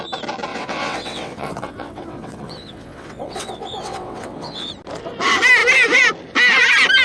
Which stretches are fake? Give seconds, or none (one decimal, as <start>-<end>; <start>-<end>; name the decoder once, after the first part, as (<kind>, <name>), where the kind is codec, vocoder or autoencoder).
0.5-4.7 (vocoder, WaveNeXt)